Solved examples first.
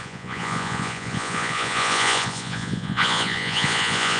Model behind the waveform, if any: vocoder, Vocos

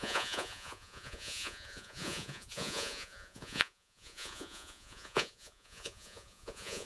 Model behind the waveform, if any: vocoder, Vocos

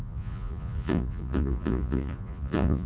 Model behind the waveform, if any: vocoder, Vocos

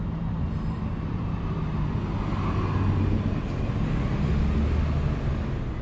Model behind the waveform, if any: none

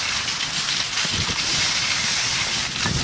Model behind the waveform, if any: none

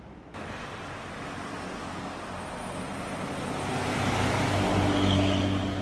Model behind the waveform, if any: none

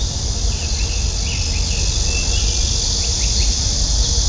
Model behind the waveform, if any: none